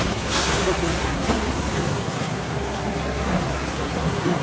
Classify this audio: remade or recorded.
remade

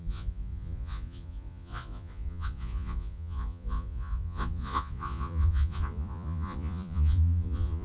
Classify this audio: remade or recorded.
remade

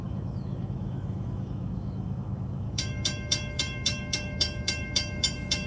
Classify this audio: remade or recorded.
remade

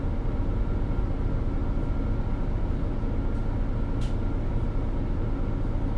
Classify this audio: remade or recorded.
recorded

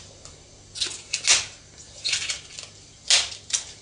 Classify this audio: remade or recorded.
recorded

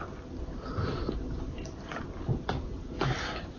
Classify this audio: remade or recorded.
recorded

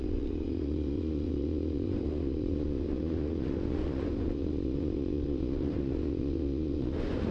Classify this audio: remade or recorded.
remade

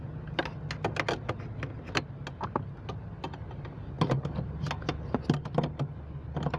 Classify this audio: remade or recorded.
recorded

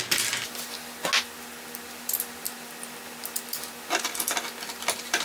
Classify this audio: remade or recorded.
recorded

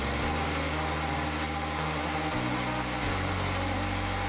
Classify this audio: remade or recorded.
recorded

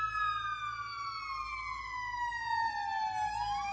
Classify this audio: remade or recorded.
recorded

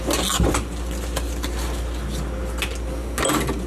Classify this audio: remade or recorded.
recorded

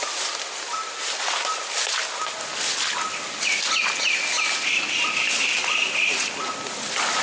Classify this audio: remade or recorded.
recorded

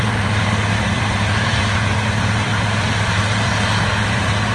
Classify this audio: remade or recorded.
remade